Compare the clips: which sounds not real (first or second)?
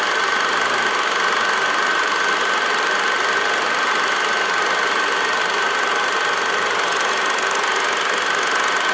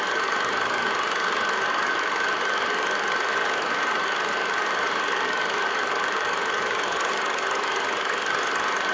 second